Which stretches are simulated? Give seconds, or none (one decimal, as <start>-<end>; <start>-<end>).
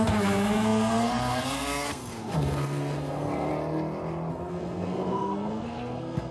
0.0-3.5; 4.3-6.3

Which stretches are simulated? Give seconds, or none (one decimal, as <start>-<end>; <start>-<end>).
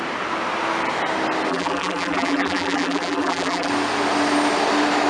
1.5-3.7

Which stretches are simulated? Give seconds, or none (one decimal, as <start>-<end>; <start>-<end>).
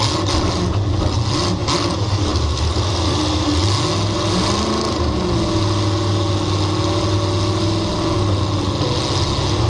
none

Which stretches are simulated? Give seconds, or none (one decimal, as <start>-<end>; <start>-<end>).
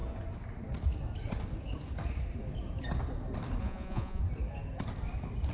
3.6-4.2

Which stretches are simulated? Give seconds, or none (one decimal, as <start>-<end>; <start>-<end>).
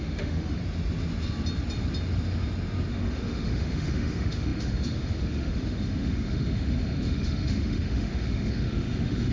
0.0-0.6; 2.9-9.3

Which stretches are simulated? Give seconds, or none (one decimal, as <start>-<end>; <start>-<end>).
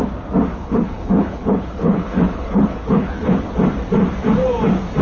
0.5-3.5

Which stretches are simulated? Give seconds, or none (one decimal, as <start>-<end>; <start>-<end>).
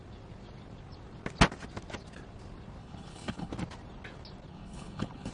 2.8-3.5; 4.5-5.3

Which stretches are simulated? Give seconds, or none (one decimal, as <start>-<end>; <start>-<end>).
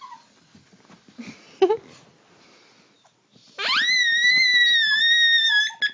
none